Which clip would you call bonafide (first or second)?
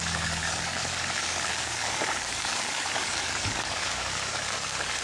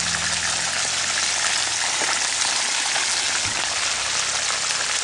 second